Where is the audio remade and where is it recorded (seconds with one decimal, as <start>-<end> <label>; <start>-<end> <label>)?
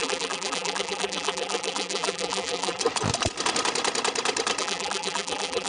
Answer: 0.0-2.8 remade; 2.8-4.6 recorded; 4.6-5.7 remade